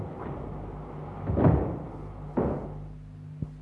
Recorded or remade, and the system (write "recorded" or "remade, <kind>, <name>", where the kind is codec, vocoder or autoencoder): recorded